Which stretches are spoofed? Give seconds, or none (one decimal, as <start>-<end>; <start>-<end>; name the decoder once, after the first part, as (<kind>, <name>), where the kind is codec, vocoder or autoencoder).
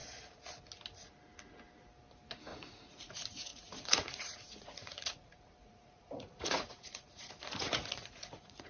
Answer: 2.5-3.1 (vocoder, Vocos); 3.5-8.7